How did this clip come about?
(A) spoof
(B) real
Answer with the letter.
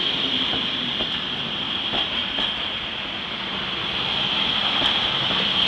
B